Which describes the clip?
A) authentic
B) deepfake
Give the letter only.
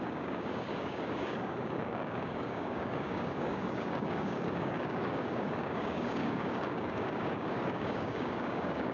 B